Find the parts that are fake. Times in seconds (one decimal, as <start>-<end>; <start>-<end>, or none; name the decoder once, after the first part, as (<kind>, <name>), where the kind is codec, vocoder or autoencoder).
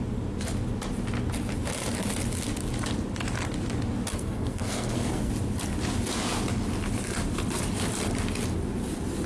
4.1-5.3 (codec, SNAC)